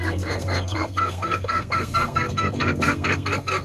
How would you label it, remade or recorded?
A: remade